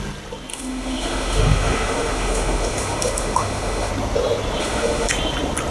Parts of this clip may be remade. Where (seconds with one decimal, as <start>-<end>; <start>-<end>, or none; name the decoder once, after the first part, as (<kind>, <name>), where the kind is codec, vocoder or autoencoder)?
0.5-3.9 (autoencoder, DAC-VAE); 4.6-5.1